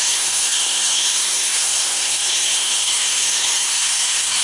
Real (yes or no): no